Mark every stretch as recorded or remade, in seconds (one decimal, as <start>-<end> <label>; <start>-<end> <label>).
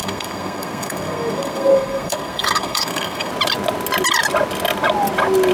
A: 0.0-3.3 remade; 3.3-5.5 recorded